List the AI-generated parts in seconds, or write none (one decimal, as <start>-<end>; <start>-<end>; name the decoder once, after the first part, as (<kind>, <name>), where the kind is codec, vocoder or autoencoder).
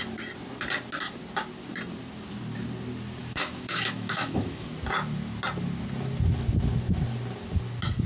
3.2-4.7 (autoencoder, DAC-VAE)